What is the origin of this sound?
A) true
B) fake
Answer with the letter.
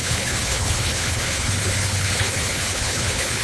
B